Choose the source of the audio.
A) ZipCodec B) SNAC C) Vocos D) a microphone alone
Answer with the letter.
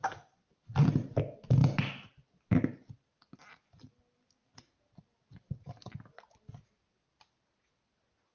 D